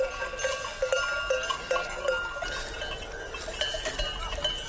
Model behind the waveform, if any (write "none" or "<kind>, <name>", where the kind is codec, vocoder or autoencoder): none